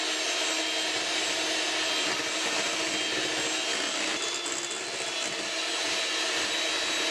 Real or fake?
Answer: real